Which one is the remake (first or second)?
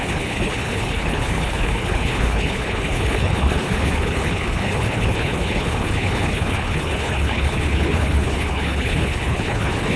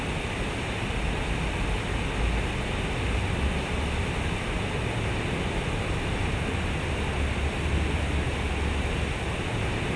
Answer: first